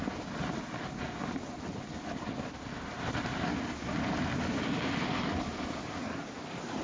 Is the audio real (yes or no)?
yes